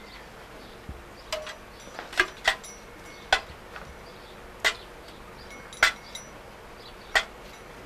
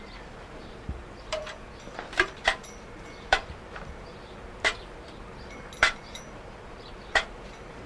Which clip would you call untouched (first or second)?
first